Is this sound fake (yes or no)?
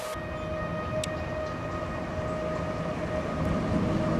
no